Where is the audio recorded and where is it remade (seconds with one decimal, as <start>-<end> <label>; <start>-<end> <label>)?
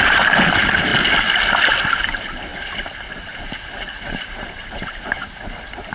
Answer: 0.0-0.9 remade; 0.9-1.9 recorded; 1.9-2.5 remade; 2.5-4.2 recorded; 4.2-5.9 remade